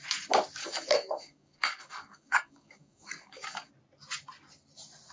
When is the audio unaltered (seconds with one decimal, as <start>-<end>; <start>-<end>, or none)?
0.0-0.6; 3.7-5.1